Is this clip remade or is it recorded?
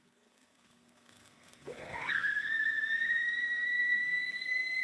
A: remade